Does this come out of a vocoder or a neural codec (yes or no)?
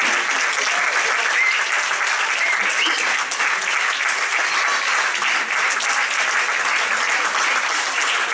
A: no